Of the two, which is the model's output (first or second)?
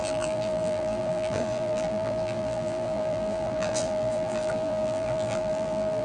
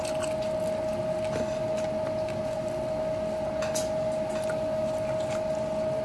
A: first